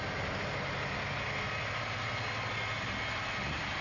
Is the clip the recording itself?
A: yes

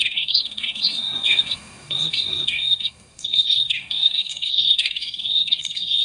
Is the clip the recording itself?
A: no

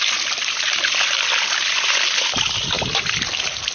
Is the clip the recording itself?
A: yes